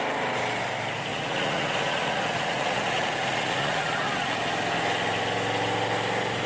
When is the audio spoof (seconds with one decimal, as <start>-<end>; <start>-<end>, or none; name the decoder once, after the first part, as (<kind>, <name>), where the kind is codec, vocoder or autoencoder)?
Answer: 1.1-4.4 (vocoder, Vocos)